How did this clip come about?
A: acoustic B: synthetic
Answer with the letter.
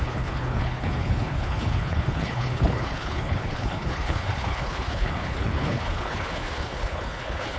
B